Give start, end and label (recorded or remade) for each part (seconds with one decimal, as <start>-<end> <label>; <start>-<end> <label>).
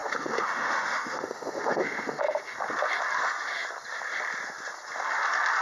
0.0-2.2 remade; 2.2-5.6 recorded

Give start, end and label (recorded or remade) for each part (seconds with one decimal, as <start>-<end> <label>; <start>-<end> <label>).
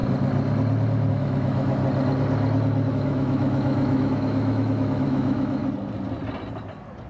0.0-1.1 recorded; 1.1-1.8 remade; 1.8-2.9 recorded; 2.9-5.6 remade; 5.6-7.1 recorded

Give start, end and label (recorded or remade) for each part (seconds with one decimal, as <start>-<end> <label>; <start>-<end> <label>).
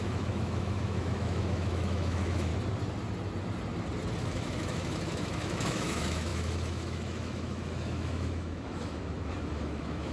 0.0-2.5 remade; 2.5-4.2 recorded; 4.2-10.1 remade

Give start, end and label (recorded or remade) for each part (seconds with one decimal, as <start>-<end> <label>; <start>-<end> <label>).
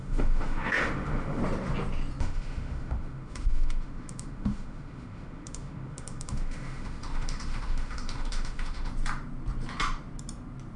0.0-1.4 remade; 1.4-2.2 recorded; 2.2-8.9 remade; 8.9-10.8 recorded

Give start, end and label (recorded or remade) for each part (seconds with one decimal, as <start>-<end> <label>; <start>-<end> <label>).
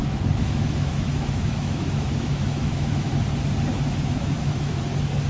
0.0-3.1 remade; 3.1-3.7 recorded; 3.7-4.8 remade; 4.8-5.3 recorded